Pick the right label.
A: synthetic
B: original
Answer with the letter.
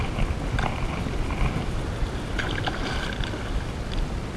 B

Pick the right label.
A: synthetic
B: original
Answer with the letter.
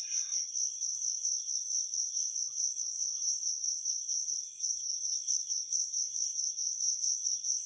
A